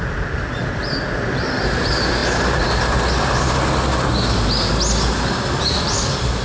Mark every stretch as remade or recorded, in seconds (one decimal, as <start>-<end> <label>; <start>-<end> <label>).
0.0-6.4 recorded